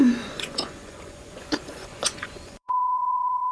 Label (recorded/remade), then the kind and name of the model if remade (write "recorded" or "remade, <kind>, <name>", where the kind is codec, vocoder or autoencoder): remade, vocoder, Vocos